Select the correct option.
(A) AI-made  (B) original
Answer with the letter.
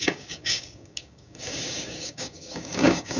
A